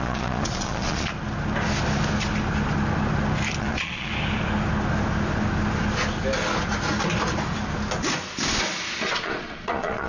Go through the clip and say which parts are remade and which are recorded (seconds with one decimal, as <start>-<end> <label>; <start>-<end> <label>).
0.0-1.1 remade; 1.1-3.6 recorded; 3.6-4.1 remade; 4.1-9.1 recorded; 9.1-10.1 remade